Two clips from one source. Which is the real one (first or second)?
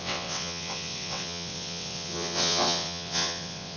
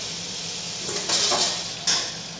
second